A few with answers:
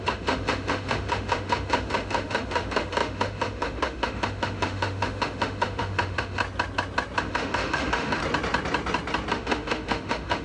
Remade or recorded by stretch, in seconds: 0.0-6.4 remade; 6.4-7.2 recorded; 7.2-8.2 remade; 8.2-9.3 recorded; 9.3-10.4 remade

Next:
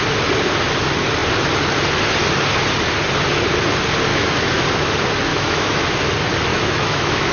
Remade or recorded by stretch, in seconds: 0.0-4.1 recorded; 4.1-4.6 remade; 4.6-5.3 recorded; 5.3-5.8 remade; 5.8-6.5 recorded; 6.5-7.3 remade

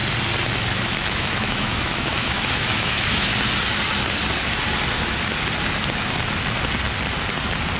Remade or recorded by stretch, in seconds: 0.0-0.7 recorded; 0.7-3.3 remade; 3.3-7.8 recorded

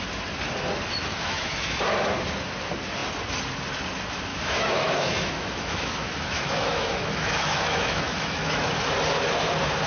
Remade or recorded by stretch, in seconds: 0.0-1.1 recorded; 1.1-1.8 remade; 1.8-4.3 recorded; 4.3-8.7 remade; 8.7-9.9 recorded

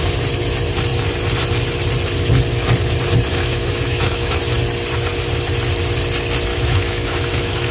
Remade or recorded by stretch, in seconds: 0.0-3.3 recorded; 3.3-4.4 remade; 4.4-6.5 recorded; 6.5-7.7 remade